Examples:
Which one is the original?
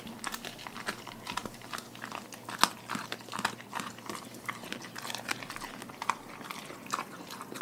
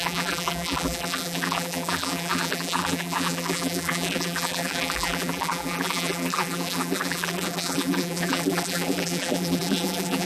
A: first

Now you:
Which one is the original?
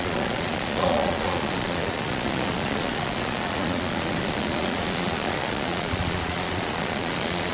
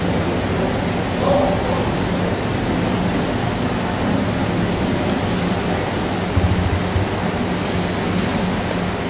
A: second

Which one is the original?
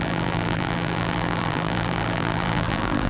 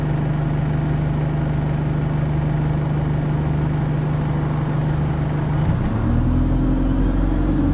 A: second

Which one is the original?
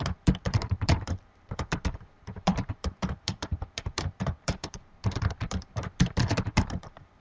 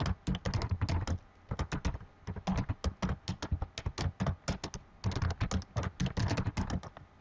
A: second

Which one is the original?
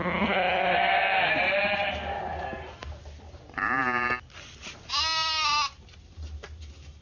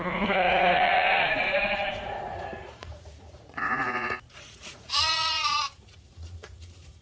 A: first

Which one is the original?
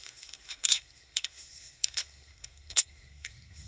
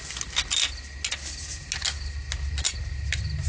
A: second